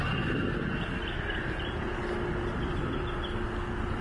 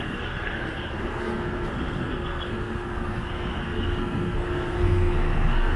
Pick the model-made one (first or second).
second